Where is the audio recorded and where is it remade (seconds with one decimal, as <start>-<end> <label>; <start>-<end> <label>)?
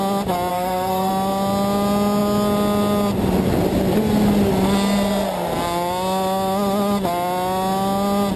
0.0-0.5 recorded; 0.5-1.1 remade; 1.1-8.4 recorded